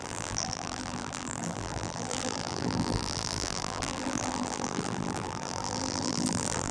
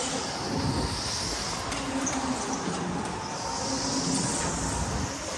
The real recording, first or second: second